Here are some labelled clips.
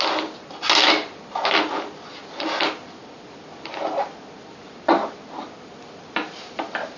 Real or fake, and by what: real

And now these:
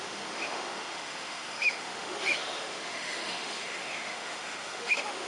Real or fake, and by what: fake, autoencoder, DAC-VAE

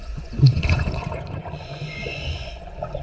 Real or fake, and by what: fake, vocoder, Vocos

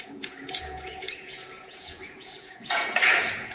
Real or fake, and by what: fake, vocoder, Vocos